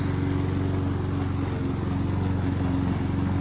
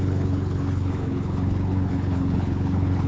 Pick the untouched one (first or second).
first